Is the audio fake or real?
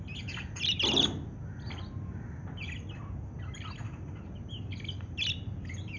real